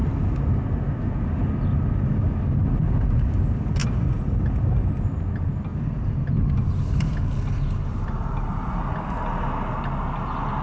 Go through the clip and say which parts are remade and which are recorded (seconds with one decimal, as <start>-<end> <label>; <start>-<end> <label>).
0.0-3.8 recorded; 3.8-4.9 remade; 4.9-5.7 recorded; 5.7-8.8 remade; 8.8-10.6 recorded